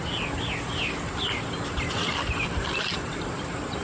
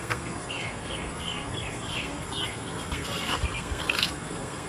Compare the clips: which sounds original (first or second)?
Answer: first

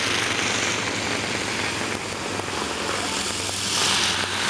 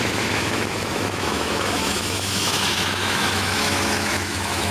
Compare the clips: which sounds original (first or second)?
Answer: first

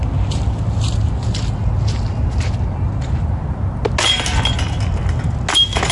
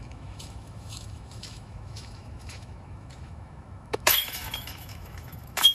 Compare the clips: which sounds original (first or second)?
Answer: first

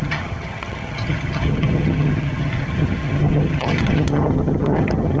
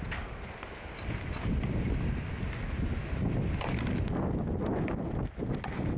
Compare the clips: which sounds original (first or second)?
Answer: second